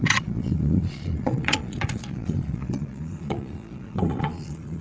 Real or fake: fake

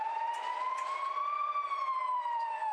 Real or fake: fake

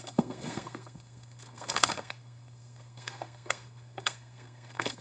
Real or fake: fake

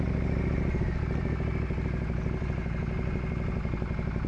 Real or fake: real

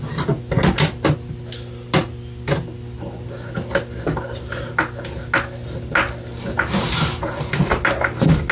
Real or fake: real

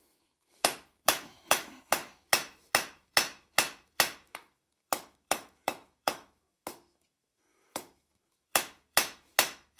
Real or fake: fake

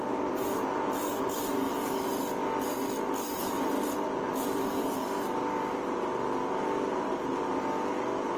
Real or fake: real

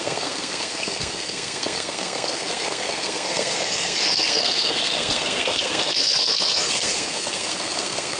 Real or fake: fake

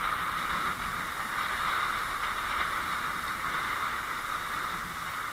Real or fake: real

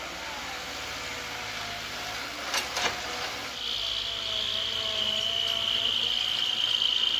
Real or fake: real